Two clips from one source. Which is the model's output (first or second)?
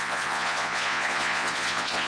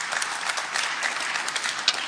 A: first